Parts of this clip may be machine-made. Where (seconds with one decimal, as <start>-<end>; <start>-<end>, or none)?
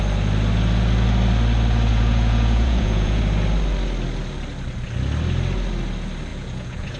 1.9-3.2; 6.3-7.0